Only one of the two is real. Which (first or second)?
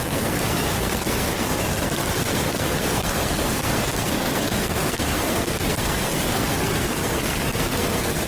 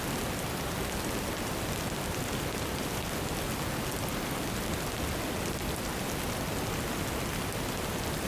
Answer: second